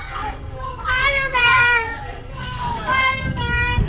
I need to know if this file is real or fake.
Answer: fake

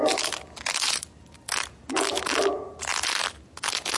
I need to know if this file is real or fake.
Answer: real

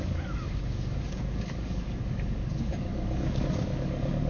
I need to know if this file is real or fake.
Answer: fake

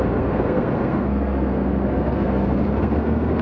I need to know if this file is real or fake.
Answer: fake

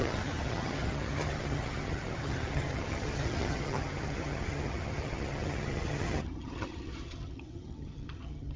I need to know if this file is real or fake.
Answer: fake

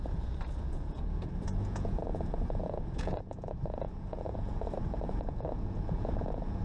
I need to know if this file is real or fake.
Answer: fake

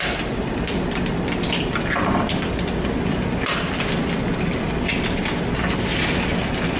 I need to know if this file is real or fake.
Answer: real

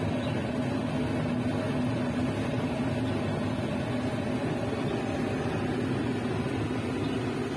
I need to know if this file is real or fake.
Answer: real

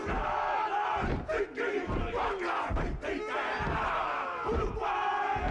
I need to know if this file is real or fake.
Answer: fake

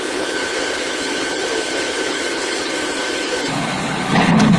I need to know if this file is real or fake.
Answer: fake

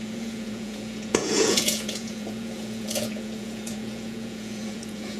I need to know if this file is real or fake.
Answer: fake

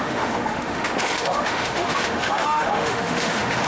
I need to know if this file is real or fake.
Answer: fake